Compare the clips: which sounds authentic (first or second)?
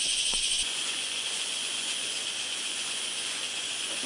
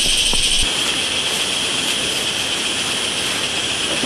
second